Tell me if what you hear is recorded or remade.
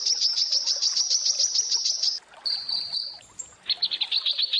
recorded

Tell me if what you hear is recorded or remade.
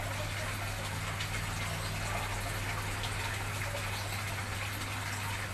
recorded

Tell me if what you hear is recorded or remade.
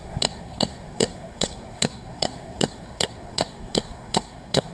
remade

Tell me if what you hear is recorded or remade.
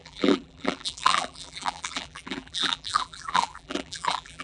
remade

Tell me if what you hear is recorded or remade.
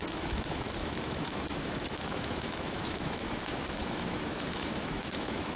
remade